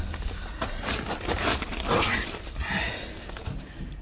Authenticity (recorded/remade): recorded